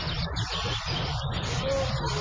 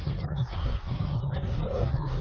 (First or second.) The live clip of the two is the first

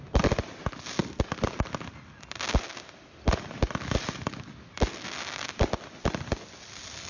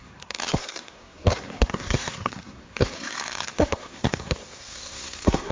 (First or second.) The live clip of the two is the first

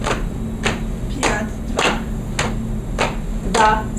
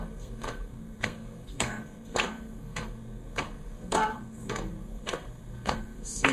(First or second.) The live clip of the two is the first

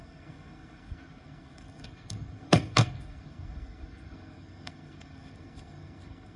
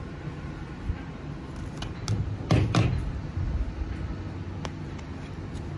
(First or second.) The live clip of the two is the second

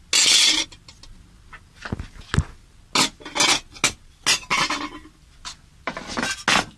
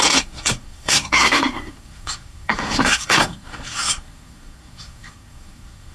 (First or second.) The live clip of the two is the first